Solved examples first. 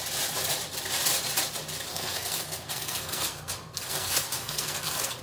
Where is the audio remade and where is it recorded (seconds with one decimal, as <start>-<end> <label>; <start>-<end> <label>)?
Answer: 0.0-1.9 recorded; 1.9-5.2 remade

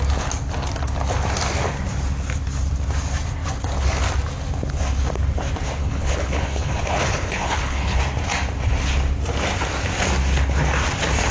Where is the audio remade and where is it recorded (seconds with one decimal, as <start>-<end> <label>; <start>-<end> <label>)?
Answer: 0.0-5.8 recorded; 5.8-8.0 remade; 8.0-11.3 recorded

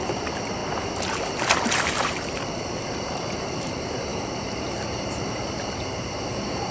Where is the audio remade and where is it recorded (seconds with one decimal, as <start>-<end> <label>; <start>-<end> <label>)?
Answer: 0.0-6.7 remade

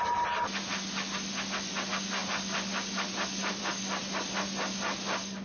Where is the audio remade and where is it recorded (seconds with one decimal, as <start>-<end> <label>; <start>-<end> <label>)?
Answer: 0.0-5.4 recorded

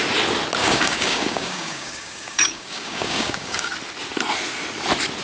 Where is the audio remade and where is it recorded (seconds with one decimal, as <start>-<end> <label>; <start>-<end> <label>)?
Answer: 0.0-0.6 recorded; 0.6-3.7 remade; 3.7-5.2 recorded

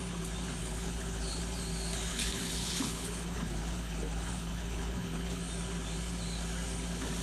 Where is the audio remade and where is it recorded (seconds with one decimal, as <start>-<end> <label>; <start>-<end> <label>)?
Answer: 0.0-0.6 recorded; 0.6-1.4 remade; 1.4-2.1 recorded; 2.1-5.4 remade; 5.4-7.2 recorded

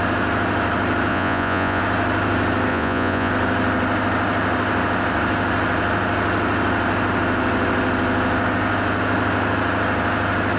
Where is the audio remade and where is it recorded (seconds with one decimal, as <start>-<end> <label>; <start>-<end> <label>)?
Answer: 0.0-1.1 recorded; 1.1-1.8 remade; 1.8-2.7 recorded; 2.7-3.3 remade; 3.3-10.6 recorded